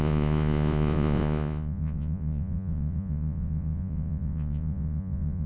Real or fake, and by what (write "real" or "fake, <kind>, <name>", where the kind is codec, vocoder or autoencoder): fake, vocoder, Vocos